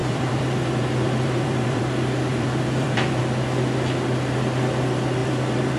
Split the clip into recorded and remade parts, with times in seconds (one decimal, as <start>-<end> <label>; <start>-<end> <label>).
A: 0.0-1.8 remade; 1.8-2.3 recorded; 2.3-3.2 remade; 3.2-5.2 recorded; 5.2-5.8 remade